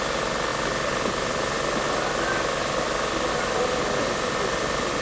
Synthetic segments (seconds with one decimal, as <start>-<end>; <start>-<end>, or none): none